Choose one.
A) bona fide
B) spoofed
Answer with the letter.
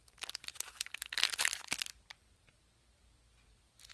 A